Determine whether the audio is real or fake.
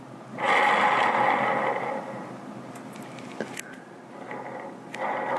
real